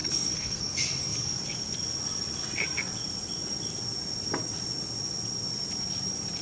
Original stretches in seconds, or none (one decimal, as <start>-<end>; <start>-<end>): 0.6-6.4